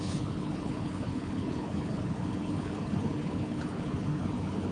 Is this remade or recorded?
remade